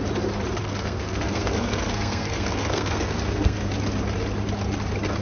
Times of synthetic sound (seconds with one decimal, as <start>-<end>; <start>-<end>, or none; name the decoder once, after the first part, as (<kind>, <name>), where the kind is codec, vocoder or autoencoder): 0.6-3.7 (codec, SNAC)